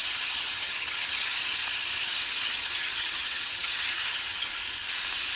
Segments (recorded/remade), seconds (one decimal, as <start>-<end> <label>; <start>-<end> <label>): 0.0-4.5 remade; 4.5-5.4 recorded